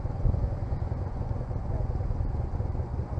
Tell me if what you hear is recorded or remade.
remade